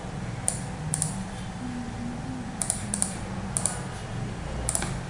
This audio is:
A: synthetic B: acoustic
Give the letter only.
B